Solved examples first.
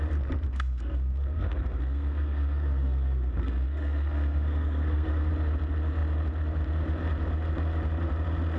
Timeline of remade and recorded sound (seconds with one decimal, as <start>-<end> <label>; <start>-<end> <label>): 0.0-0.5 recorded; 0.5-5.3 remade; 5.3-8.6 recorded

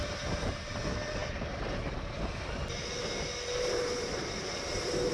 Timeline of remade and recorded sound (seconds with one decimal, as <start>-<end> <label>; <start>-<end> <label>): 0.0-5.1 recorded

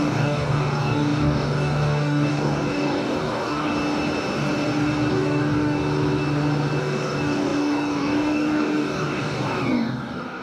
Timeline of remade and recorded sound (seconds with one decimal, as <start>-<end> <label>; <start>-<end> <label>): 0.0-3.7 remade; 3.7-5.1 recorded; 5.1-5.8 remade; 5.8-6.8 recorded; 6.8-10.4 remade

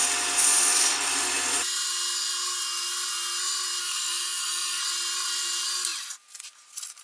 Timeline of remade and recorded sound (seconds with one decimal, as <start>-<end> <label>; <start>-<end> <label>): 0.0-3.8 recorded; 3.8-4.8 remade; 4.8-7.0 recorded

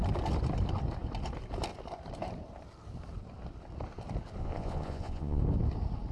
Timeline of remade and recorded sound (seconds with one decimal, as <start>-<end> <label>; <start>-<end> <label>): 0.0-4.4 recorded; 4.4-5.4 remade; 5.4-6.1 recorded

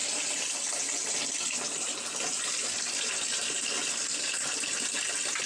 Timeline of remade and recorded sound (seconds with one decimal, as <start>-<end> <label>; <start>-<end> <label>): 0.0-5.5 recorded

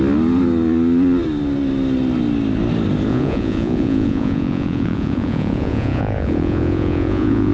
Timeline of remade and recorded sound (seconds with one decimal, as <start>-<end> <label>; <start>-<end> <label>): 0.0-3.1 recorded; 3.1-7.5 remade